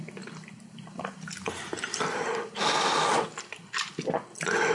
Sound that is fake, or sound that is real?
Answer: real